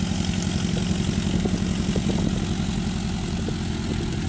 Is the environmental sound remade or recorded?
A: recorded